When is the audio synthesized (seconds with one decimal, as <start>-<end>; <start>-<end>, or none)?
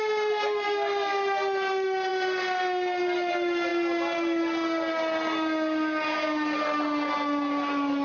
none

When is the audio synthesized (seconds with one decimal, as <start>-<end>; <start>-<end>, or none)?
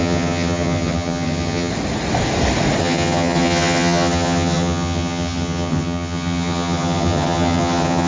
0.0-1.7; 2.8-8.1